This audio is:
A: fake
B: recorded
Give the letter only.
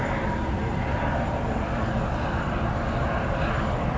B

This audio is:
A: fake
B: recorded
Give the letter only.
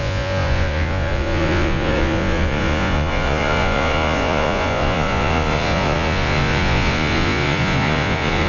A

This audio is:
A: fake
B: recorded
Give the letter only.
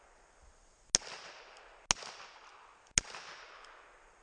B